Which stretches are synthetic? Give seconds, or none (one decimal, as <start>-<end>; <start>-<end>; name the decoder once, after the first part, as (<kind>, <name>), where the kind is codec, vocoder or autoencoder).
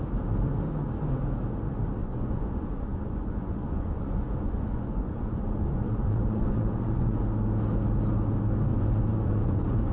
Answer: 2.0-7.2 (vocoder, Vocos); 8.7-9.9